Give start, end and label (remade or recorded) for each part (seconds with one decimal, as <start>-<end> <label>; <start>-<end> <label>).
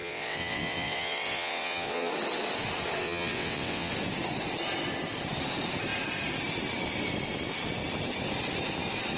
0.0-2.1 remade; 2.1-3.0 recorded; 3.0-3.9 remade; 3.9-9.2 recorded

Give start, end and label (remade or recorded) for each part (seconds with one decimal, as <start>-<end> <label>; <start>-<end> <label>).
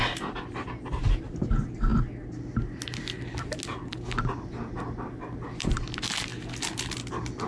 0.0-7.5 recorded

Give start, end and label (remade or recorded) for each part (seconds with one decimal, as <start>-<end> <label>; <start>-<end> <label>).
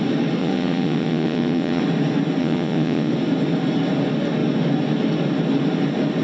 0.0-0.4 recorded; 0.4-1.8 remade; 1.8-2.4 recorded; 2.4-3.1 remade; 3.1-6.2 recorded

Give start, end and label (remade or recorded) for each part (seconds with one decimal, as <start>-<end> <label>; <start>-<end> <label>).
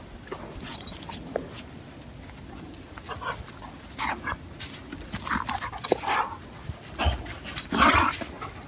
0.0-8.7 recorded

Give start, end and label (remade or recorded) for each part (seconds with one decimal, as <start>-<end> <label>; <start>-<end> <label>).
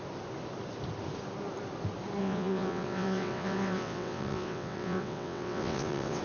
0.0-2.2 recorded; 2.2-6.2 remade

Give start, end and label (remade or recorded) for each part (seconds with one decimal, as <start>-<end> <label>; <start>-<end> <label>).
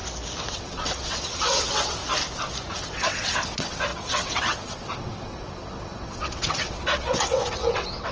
0.0-0.5 recorded; 0.5-2.0 remade; 2.0-2.7 recorded; 2.7-8.1 remade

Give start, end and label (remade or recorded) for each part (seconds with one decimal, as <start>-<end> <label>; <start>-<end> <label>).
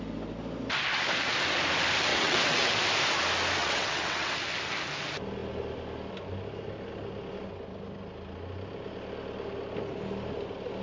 0.0-2.1 recorded; 2.1-2.7 remade; 2.7-3.6 recorded; 3.6-4.3 remade; 4.3-10.8 recorded